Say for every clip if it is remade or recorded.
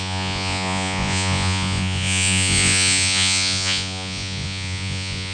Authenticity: remade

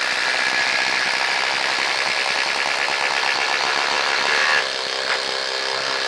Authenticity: recorded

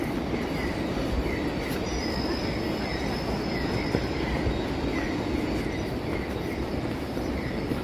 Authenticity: recorded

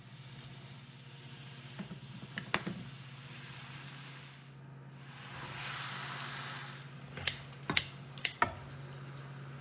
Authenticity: recorded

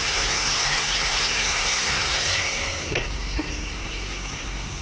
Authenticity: remade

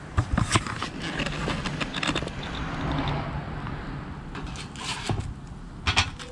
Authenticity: recorded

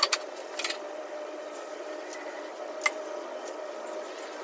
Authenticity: recorded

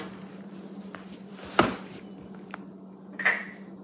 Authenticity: recorded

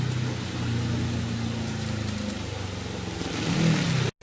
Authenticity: recorded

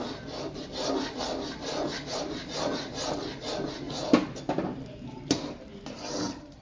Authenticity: recorded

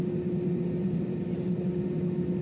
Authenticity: recorded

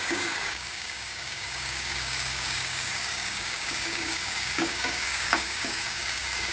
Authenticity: remade